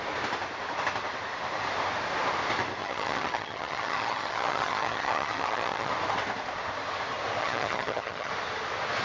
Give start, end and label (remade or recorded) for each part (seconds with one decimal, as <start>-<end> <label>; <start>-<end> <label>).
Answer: 0.0-2.8 recorded; 2.8-5.9 remade; 5.9-7.4 recorded; 7.4-8.3 remade; 8.3-9.0 recorded